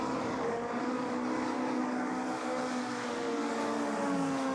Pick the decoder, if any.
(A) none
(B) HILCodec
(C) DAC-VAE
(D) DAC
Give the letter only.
D